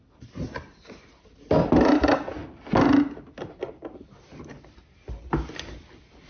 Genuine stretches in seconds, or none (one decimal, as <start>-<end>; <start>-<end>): 0.0-6.3